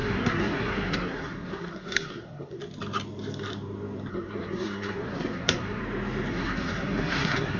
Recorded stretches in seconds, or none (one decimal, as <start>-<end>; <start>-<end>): 2.6-4.1; 5.8-6.3